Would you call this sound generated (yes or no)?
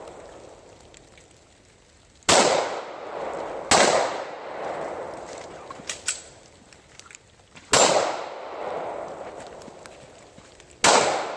no